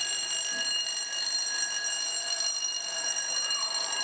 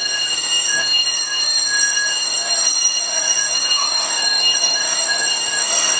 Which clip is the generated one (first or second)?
second